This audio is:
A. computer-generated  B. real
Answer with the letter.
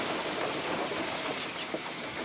A